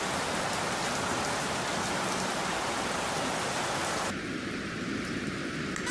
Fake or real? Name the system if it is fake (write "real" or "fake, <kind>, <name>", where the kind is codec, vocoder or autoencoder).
real